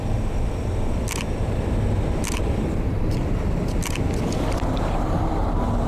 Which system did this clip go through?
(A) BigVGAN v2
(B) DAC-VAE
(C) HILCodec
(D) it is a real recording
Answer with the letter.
D